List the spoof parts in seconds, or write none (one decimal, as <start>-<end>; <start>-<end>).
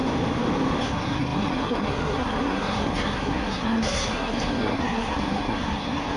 0.8-6.2